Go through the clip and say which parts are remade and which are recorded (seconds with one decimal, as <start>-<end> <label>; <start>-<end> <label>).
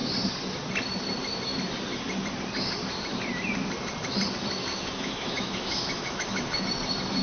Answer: 0.0-4.7 recorded; 4.7-6.6 remade; 6.6-7.2 recorded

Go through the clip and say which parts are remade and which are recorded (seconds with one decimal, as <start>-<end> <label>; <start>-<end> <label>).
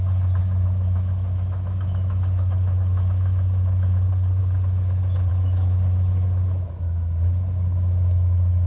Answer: 0.0-0.4 recorded; 0.4-4.4 remade; 4.4-5.3 recorded; 5.3-8.7 remade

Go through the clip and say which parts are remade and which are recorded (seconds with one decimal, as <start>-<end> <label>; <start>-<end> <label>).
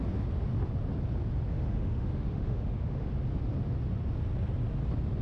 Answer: 0.0-1.5 recorded; 1.5-3.1 remade; 3.1-5.2 recorded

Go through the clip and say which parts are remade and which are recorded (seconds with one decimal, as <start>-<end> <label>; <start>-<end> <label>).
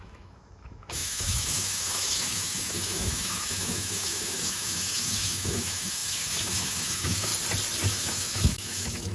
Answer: 0.0-7.3 remade; 7.3-7.9 recorded; 7.9-9.1 remade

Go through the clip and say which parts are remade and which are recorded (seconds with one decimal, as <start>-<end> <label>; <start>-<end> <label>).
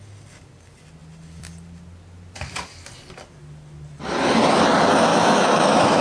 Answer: 0.0-5.1 recorded; 5.1-6.0 remade